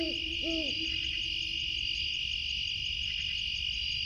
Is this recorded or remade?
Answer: recorded